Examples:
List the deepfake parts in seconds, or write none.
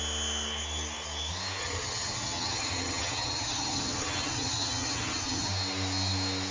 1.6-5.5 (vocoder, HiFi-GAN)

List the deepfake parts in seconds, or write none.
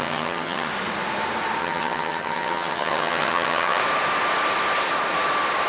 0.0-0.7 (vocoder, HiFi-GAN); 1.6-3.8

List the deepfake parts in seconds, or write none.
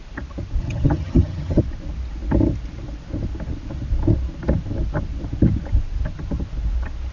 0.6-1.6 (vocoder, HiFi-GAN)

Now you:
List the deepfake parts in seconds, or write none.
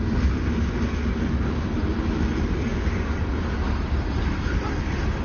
none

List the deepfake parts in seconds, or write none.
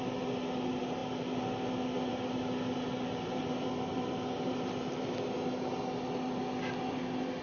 none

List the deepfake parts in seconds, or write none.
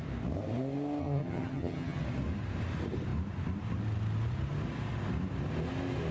1.0-2.0 (vocoder, HiFi-GAN)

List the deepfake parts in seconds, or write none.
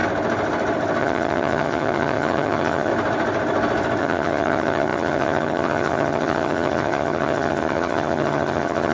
1.0-2.9 (vocoder, HiFi-GAN); 4.0-8.9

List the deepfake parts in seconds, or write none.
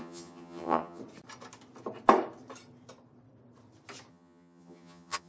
0.0-1.0 (vocoder, HiFi-GAN); 4.1-5.3